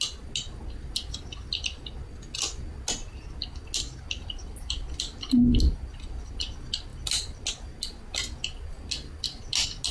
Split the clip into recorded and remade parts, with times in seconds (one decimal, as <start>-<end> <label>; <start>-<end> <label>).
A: 0.0-9.9 recorded